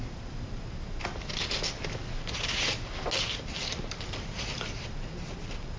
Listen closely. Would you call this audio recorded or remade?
recorded